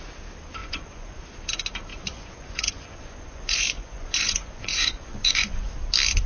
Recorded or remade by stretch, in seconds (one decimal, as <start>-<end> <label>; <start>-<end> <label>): 0.0-0.6 recorded; 0.6-1.2 remade; 1.2-1.9 recorded; 1.9-5.7 remade; 5.7-6.3 recorded